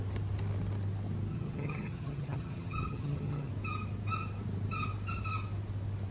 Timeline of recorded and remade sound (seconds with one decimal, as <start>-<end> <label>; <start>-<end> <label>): 0.0-1.3 recorded; 1.3-3.5 remade; 3.5-6.1 recorded